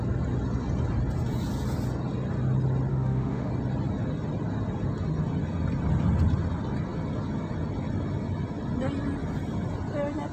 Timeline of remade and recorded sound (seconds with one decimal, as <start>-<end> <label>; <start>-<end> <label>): 0.0-2.9 recorded; 2.9-3.5 remade; 3.5-10.3 recorded